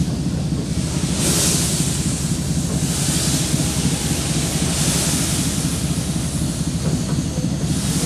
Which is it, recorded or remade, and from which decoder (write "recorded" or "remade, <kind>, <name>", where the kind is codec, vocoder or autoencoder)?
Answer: recorded